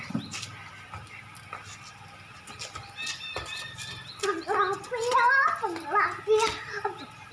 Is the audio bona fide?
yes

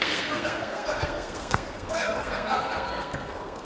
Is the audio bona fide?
no